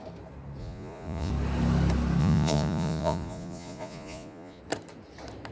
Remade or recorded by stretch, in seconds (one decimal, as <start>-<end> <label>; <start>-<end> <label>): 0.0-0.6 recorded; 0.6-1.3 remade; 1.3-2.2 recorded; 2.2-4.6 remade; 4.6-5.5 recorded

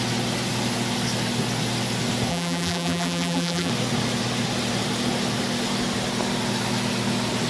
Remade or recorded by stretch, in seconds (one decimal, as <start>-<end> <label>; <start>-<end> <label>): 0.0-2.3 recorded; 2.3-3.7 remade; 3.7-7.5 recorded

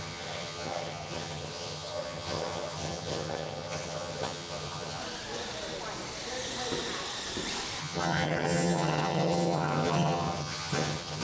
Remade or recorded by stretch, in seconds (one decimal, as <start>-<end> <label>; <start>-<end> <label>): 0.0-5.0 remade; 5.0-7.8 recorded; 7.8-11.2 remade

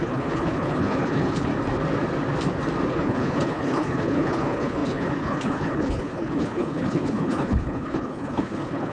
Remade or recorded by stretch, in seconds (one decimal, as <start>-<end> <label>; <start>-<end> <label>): 0.0-1.5 remade; 1.5-2.9 recorded; 2.9-8.9 remade

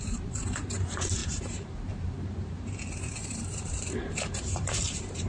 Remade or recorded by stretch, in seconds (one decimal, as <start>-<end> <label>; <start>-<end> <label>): 0.0-5.3 remade